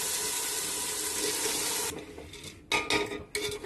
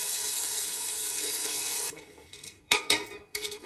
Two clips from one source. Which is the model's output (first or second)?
second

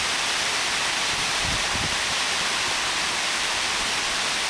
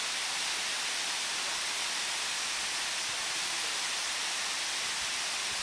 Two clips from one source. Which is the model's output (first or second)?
first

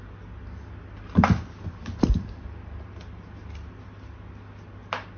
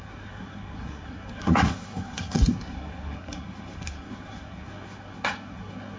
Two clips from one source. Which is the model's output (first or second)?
second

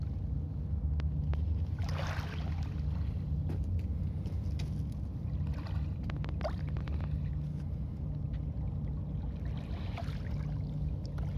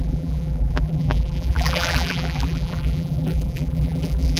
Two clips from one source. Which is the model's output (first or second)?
second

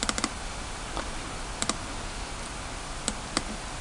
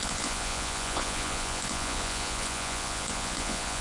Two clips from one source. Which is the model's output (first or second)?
second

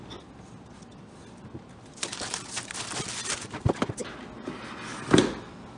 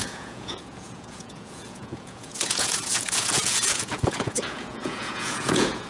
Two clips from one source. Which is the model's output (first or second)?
second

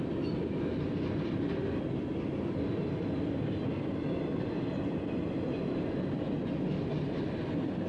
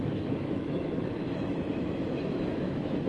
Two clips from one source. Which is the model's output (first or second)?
second